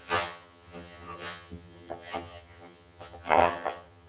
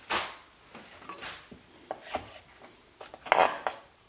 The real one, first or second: second